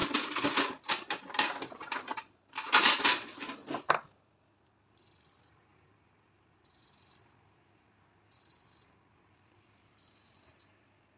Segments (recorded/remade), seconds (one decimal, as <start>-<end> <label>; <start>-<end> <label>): 0.0-3.3 remade; 3.3-5.7 recorded; 5.7-10.1 remade; 10.1-11.2 recorded